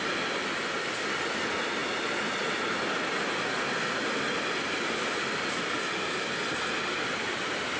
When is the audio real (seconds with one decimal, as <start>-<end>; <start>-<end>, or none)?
0.0-7.8